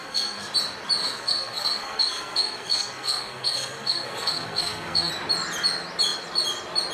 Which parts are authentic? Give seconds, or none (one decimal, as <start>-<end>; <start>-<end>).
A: 0.5-1.0; 5.1-6.9